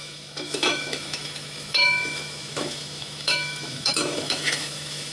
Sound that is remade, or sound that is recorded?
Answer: remade